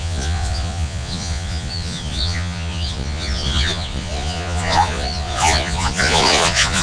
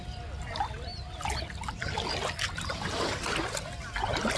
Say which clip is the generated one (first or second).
first